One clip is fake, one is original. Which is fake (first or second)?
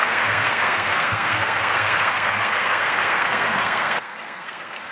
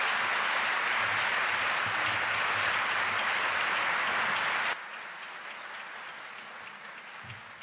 first